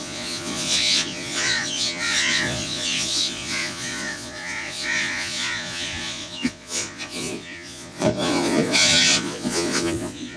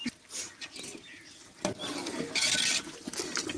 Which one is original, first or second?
second